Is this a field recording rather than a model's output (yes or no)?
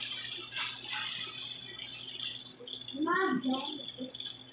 yes